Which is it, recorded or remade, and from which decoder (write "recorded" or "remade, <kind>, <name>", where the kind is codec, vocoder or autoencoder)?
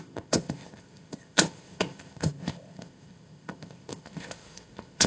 remade, codec, ZipCodec